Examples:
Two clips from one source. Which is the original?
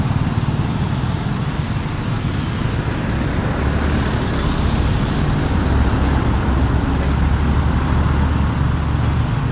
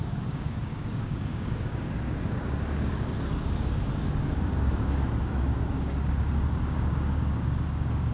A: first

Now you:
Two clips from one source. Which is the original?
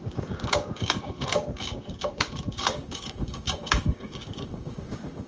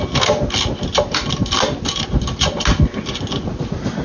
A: second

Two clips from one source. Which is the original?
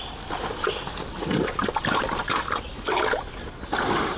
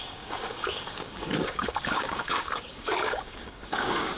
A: first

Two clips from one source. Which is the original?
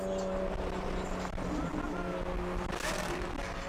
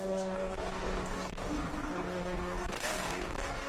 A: first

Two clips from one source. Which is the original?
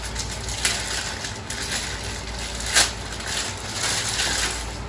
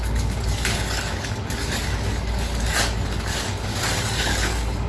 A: first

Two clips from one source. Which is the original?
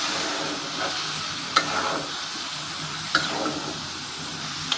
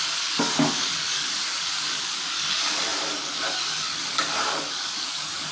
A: first